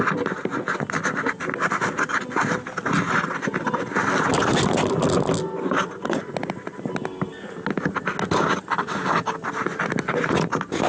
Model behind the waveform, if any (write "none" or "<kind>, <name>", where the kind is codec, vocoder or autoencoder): none